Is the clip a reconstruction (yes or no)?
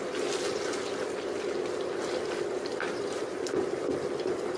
no